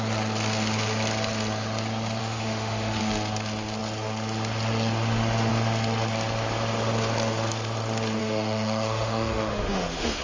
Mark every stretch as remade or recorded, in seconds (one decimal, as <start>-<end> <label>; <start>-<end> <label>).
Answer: 0.0-2.2 recorded; 2.2-3.0 remade; 3.0-8.2 recorded; 8.2-10.2 remade